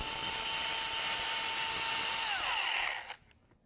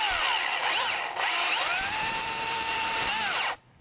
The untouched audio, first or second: first